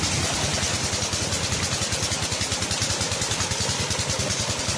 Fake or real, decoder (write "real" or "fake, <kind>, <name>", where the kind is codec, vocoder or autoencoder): real